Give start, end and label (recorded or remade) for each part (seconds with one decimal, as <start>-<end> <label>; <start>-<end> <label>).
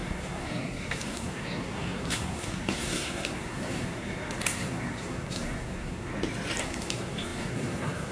0.0-6.1 remade; 6.1-6.6 recorded; 6.6-8.1 remade